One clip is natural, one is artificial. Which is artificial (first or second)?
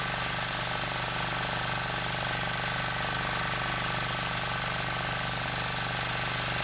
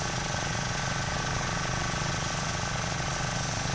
second